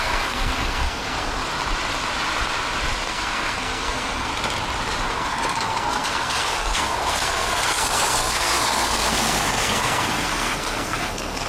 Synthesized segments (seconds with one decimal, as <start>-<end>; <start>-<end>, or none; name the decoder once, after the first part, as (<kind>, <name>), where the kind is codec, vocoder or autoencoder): 0.0-1.4 (codec, SNAC); 3.1-4.3; 5.1-11.5